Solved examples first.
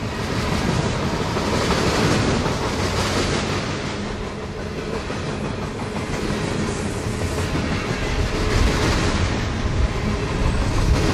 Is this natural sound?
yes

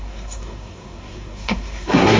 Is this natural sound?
no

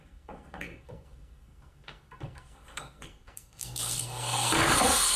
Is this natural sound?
no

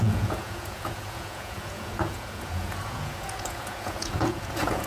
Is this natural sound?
no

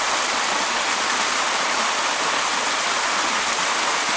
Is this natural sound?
yes